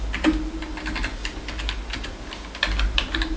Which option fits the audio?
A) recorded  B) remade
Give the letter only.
A